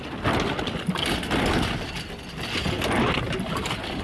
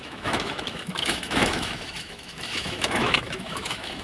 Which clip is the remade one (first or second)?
second